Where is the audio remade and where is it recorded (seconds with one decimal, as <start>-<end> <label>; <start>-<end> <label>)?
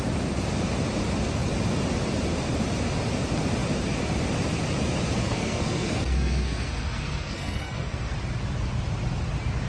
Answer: 0.0-5.2 recorded; 5.2-8.1 remade; 8.1-9.7 recorded